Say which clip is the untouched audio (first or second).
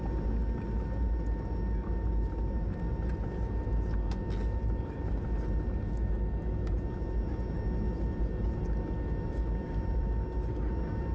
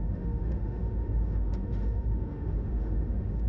first